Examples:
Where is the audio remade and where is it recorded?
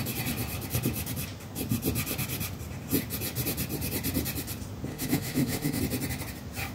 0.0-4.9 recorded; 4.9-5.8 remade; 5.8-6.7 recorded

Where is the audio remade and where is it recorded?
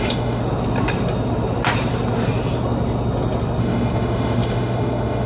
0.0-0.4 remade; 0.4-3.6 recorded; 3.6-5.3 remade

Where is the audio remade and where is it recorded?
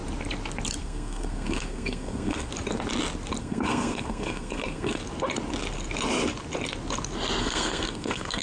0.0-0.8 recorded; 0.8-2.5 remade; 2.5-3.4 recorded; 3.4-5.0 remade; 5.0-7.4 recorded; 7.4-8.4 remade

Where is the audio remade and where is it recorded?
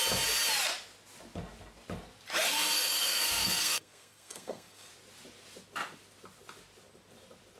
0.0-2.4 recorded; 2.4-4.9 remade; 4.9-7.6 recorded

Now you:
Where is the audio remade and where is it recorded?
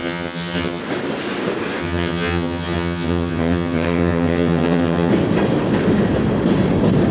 0.0-0.8 remade; 0.8-1.8 recorded; 1.8-5.1 remade; 5.1-7.1 recorded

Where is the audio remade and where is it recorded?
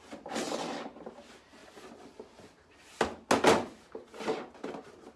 0.0-5.2 recorded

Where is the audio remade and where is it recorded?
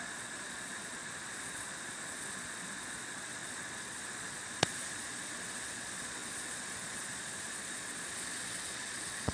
0.0-9.3 remade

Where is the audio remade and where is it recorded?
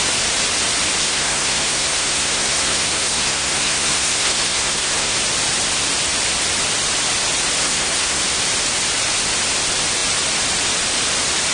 0.0-1.0 recorded; 1.0-5.2 remade; 5.2-7.6 recorded; 7.6-8.2 remade; 8.2-11.5 recorded